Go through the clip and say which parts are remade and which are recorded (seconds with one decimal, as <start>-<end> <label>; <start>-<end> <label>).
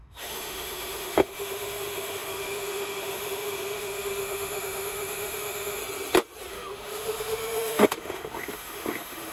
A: 0.0-5.8 remade; 5.8-6.5 recorded; 6.5-9.3 remade